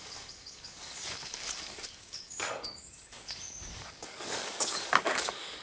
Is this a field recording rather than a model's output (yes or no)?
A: no